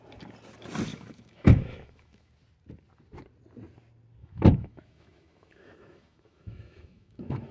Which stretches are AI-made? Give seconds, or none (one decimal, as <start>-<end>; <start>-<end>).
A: 0.9-2.3; 4.2-7.5